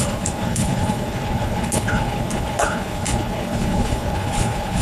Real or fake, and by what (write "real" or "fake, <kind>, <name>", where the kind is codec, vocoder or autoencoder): fake, codec, HILCodec